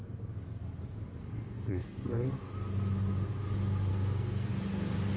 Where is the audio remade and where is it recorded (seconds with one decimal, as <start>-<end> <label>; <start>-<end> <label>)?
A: 0.0-1.2 recorded; 1.2-2.3 remade; 2.3-3.9 recorded; 3.9-4.5 remade; 4.5-5.2 recorded